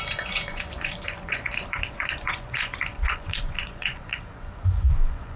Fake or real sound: fake